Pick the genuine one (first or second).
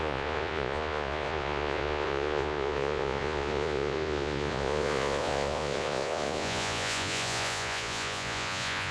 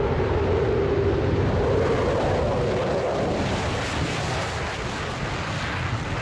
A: second